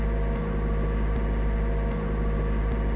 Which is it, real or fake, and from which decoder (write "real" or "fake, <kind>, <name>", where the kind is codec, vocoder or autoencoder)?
real